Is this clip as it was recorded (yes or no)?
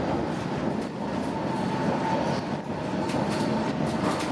yes